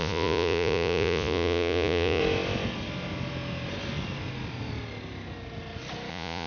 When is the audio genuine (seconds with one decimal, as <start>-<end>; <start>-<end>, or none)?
2.2-6.1